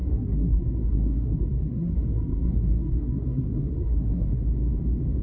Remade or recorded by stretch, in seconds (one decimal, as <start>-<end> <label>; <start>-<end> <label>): 0.0-4.4 remade; 4.4-5.2 recorded